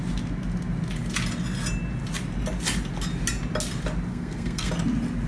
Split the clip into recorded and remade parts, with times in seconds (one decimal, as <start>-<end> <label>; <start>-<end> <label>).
0.0-4.1 recorded; 4.1-4.7 remade; 4.7-5.3 recorded